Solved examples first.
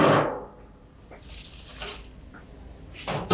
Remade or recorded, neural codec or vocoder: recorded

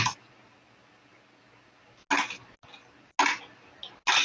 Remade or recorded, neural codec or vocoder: recorded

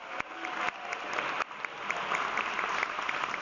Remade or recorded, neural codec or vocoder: recorded